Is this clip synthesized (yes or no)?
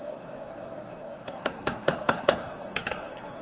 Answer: yes